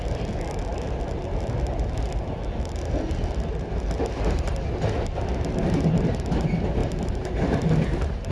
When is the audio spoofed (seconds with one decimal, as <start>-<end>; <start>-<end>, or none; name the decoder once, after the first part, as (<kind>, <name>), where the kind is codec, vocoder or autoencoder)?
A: 6.8-7.6 (vocoder, BigVGAN v2)